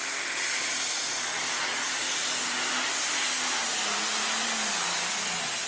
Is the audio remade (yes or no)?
no